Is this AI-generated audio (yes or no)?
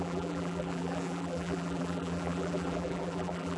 yes